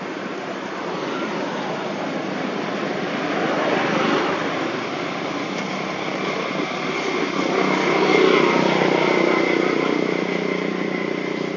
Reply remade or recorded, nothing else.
recorded